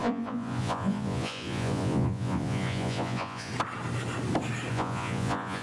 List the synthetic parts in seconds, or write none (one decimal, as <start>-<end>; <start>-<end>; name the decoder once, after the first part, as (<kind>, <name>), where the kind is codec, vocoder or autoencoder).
0.0-3.5 (vocoder, Vocos); 4.7-5.6